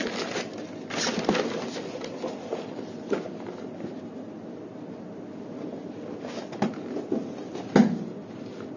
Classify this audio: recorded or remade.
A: recorded